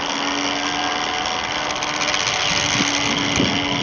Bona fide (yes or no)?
yes